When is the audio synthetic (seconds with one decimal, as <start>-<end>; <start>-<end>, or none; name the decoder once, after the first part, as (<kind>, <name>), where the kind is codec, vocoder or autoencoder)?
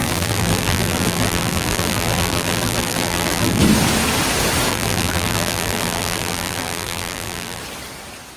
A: 0.0-3.6 (vocoder, BigVGAN v2); 4.7-7.6